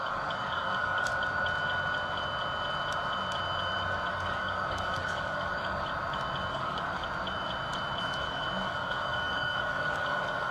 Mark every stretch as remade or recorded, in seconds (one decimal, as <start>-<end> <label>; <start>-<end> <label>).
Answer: 0.0-1.1 remade; 1.1-4.1 recorded; 4.1-5.9 remade; 5.9-6.5 recorded; 6.5-7.0 remade; 7.0-8.2 recorded; 8.2-10.5 remade